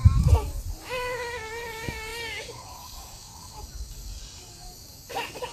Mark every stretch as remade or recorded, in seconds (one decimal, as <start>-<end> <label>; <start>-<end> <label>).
0.0-0.9 recorded; 0.9-5.5 remade